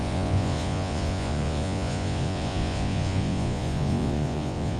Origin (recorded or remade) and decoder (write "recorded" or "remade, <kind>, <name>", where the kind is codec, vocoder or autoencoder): remade, vocoder, Vocos